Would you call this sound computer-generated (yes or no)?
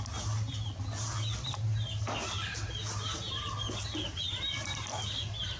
yes